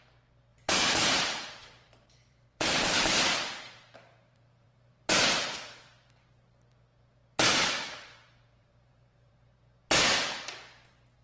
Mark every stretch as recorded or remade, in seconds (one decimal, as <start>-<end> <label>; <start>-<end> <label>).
0.0-0.5 recorded; 0.5-5.1 remade; 5.1-7.5 recorded; 7.5-9.3 remade; 9.3-11.2 recorded